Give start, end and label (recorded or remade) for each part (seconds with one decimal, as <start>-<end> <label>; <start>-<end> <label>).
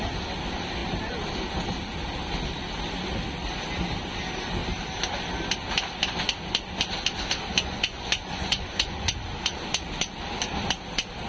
0.0-7.5 recorded; 7.5-9.1 remade; 9.1-11.3 recorded